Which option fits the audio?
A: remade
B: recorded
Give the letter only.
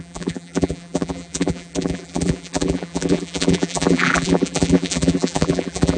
A